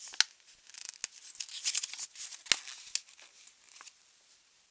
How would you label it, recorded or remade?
recorded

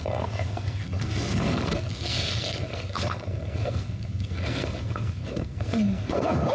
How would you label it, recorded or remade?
remade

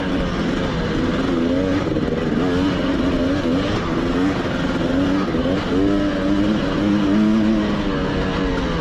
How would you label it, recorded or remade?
recorded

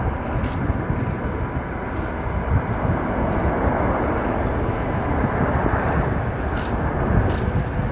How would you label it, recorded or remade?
recorded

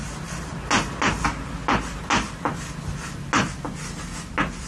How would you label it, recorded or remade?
recorded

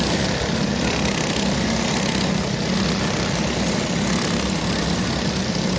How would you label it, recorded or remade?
recorded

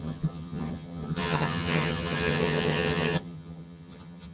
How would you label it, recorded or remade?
remade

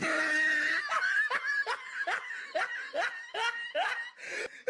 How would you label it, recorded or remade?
recorded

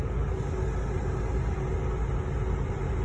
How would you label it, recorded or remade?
recorded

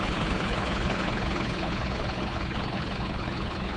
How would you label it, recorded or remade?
remade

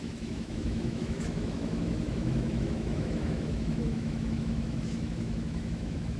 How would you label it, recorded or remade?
remade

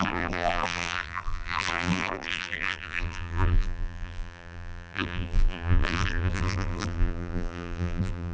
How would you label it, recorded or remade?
remade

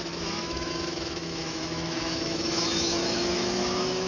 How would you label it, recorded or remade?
remade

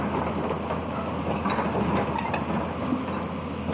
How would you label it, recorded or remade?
recorded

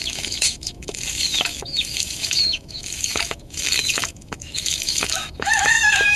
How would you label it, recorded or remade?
remade